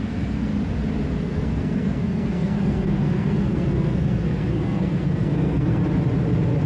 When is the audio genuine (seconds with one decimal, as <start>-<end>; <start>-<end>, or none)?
0.5-1.2; 5.8-6.7